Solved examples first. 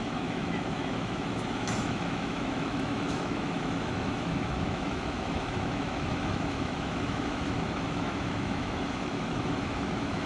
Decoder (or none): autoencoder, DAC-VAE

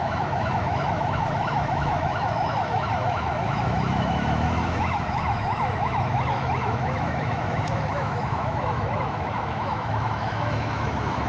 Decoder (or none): autoencoder, DAC-VAE